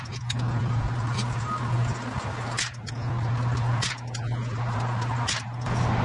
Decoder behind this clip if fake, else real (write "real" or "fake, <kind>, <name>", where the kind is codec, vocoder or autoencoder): real